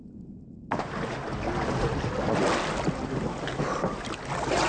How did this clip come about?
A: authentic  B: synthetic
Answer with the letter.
A